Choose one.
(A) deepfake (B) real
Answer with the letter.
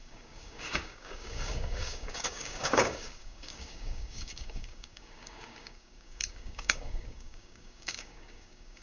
A